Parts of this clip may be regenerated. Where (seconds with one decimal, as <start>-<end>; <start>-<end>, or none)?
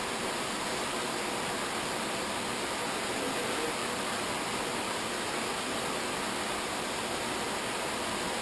none